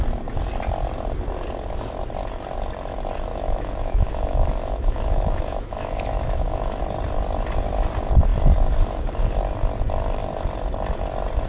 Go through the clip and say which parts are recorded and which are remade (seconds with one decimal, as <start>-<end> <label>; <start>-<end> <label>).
0.0-3.3 recorded; 3.3-6.8 remade; 6.8-11.5 recorded